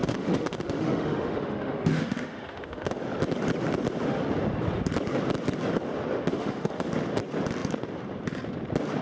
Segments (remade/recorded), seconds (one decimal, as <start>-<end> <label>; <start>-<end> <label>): 0.0-3.0 remade; 3.0-6.3 recorded; 6.3-6.9 remade; 6.9-9.0 recorded